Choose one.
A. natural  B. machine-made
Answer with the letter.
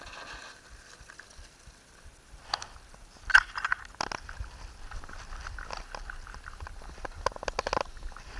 A